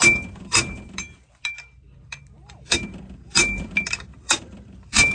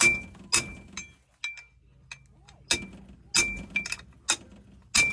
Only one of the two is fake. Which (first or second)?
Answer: first